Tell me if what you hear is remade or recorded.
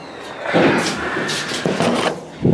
recorded